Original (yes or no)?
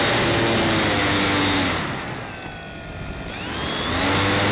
yes